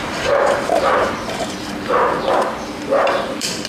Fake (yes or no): yes